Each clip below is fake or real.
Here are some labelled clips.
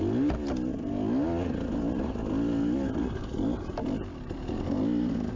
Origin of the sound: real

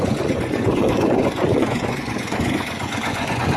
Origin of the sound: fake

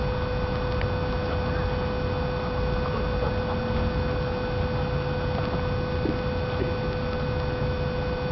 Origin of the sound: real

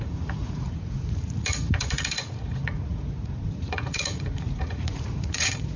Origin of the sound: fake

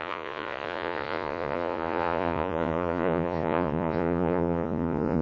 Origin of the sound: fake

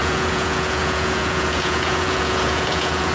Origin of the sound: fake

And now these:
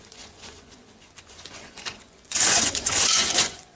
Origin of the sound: fake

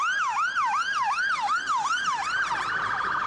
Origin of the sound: real